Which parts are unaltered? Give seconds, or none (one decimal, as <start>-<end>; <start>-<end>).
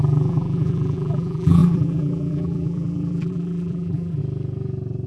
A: 4.2-5.1